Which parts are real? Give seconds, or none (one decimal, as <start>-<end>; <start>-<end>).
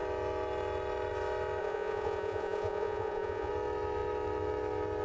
0.0-1.6; 3.5-5.0